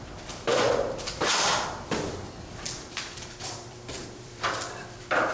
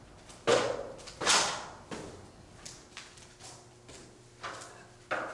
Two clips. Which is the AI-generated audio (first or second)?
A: first